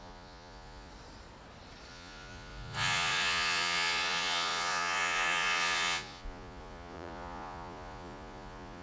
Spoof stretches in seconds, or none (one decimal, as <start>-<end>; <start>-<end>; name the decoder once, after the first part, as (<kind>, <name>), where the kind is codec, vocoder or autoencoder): 0.0-0.9 (vocoder, Vocos); 1.9-8.8

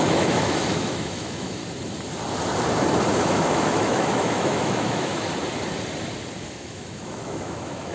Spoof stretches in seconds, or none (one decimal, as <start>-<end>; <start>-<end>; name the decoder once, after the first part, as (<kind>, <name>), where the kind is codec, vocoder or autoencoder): 0.0-1.6 (autoencoder, DAC-VAE); 3.1-5.3; 6.4-7.9

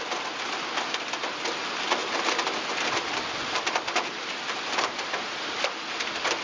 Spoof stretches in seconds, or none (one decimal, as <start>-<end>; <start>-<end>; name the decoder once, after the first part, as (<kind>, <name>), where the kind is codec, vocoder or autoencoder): none

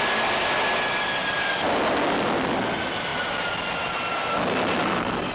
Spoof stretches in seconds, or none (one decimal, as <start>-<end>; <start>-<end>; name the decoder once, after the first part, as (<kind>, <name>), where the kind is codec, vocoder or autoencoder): none

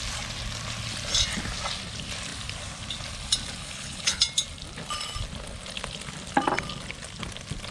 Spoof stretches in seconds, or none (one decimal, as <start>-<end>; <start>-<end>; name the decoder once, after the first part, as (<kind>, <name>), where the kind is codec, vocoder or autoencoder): 3.6-4.2 (codec, HILCodec)

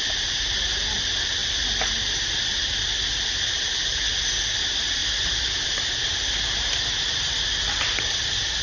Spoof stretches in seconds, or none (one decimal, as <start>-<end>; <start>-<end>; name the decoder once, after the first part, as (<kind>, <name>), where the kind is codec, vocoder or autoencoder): 5.0-8.6 (vocoder, BigVGAN v2)

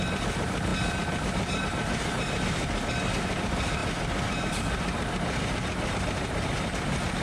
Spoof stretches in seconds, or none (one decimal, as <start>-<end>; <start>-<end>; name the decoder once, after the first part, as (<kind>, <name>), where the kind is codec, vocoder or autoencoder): none